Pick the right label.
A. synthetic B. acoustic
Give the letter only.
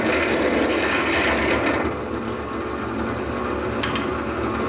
B